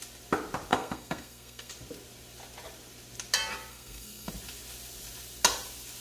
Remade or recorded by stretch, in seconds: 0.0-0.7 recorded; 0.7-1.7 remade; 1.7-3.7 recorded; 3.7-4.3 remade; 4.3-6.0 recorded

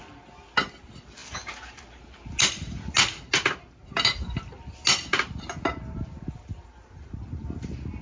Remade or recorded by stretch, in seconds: 0.0-8.0 recorded

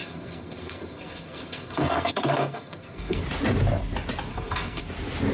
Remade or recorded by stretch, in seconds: 0.0-3.2 remade; 3.2-4.3 recorded; 4.3-4.8 remade; 4.8-5.3 recorded

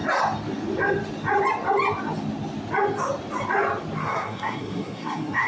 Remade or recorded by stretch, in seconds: 0.0-4.0 recorded; 4.0-5.5 remade